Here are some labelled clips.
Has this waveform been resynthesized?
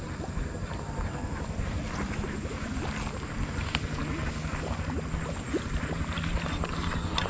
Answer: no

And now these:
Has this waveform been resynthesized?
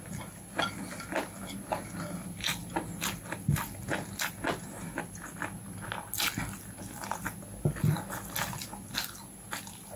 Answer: no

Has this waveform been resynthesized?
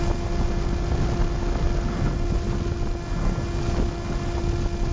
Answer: no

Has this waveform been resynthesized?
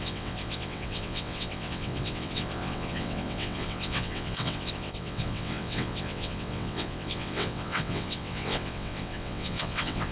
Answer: yes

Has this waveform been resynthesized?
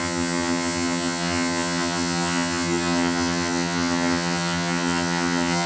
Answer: yes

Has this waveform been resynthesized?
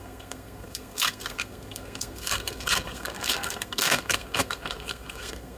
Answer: yes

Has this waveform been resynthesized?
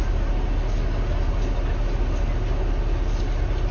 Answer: no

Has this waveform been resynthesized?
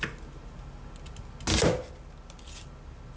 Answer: no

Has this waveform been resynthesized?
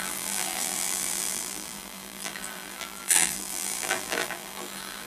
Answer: yes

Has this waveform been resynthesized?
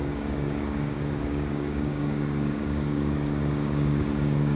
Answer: yes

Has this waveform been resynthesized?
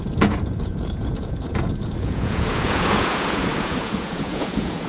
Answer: yes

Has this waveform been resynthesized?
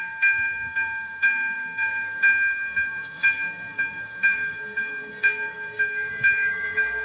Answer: yes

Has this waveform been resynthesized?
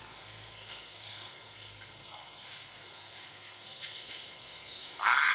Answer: yes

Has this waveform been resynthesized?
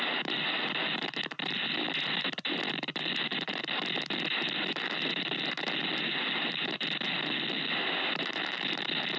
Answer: no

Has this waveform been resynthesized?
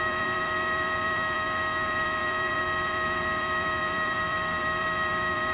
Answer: yes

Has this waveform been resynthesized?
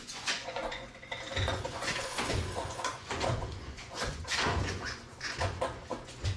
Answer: yes